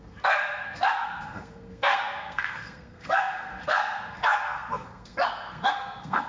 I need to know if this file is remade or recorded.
remade